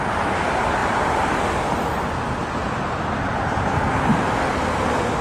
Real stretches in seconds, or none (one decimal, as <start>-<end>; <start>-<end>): 0.0-5.2